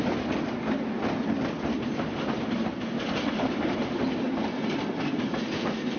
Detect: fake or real real